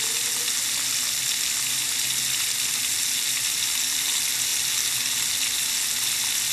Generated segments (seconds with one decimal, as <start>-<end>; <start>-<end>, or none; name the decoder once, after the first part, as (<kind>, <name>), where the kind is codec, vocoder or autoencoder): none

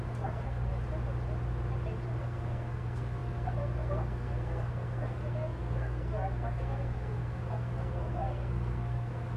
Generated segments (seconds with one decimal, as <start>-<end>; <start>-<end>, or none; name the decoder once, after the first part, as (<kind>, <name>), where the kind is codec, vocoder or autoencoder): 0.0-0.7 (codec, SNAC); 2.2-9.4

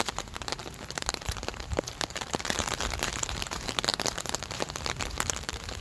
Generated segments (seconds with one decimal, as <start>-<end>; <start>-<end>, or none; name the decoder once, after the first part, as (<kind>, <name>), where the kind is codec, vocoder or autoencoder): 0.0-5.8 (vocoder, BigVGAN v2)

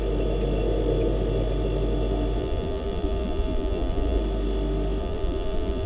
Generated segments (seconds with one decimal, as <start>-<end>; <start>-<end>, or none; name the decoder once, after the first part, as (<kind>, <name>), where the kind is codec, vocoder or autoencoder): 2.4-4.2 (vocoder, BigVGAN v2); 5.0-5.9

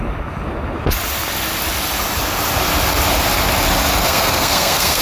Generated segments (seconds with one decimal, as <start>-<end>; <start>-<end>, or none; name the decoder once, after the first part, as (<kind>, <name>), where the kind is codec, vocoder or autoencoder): 4.0-5.0 (codec, SNAC)

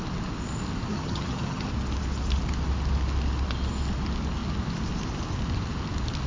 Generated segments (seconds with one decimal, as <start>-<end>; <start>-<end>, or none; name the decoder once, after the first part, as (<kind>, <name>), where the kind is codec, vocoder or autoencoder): 0.9-1.7 (vocoder, HiFi-GAN)